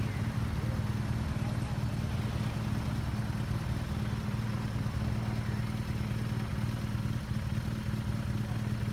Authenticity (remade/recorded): recorded